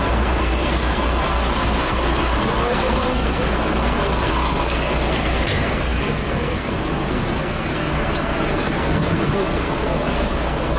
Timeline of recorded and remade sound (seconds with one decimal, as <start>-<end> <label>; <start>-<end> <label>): 0.0-10.8 remade